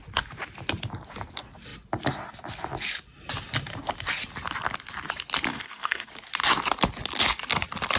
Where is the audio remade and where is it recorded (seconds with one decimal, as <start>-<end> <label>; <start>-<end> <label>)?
0.0-5.5 recorded; 5.5-6.1 remade; 6.1-8.0 recorded